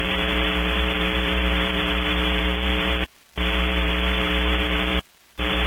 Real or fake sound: fake